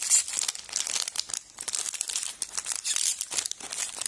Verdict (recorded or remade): recorded